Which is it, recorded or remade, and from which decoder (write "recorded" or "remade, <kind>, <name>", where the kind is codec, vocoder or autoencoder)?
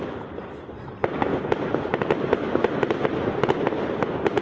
recorded